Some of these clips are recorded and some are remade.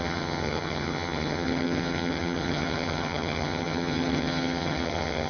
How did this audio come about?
remade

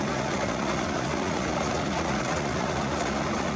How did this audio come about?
remade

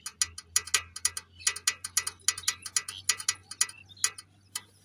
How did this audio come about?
recorded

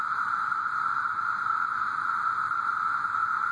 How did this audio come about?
recorded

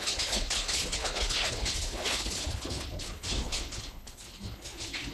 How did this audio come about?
remade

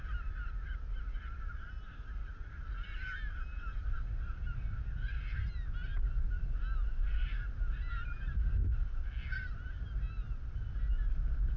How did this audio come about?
recorded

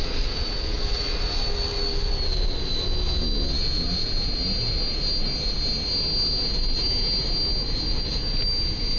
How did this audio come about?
recorded